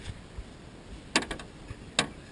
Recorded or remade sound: recorded